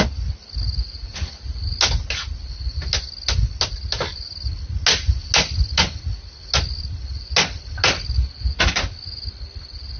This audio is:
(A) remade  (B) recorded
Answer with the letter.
B